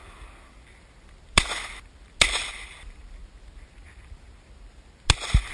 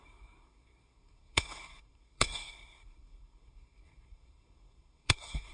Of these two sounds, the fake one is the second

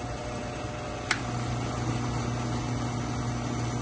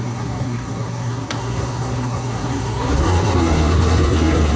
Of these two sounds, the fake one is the second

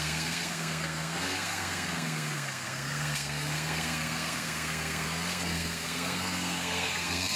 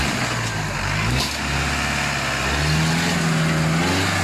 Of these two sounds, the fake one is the first